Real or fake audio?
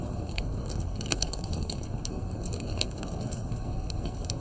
fake